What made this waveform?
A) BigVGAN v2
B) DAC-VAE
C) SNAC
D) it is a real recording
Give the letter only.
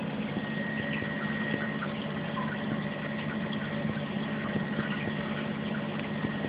D